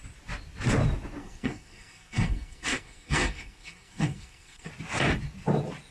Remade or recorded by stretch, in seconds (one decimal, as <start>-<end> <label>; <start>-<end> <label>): 0.0-1.2 recorded; 1.2-4.7 remade; 4.7-5.9 recorded